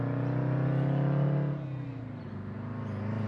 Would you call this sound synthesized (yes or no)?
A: no